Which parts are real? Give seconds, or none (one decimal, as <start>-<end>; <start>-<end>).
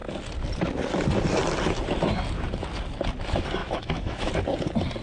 0.0-3.6; 4.3-5.0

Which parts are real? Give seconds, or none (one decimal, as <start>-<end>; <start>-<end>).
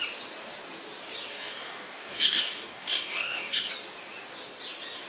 0.0-1.3; 3.7-5.1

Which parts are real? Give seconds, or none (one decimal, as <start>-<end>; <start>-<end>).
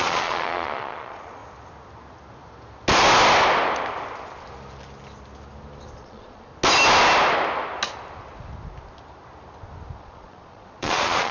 1.4-6.0; 6.5-10.0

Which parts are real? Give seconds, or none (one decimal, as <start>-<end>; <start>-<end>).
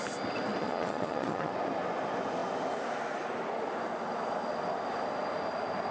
0.0-0.6; 1.5-5.9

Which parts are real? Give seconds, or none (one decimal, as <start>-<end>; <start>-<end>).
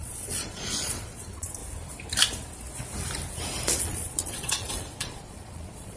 1.6-3.8